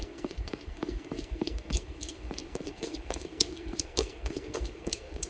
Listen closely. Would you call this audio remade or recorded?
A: remade